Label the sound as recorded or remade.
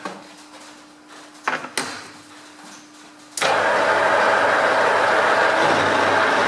recorded